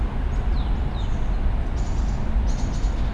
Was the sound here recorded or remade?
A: recorded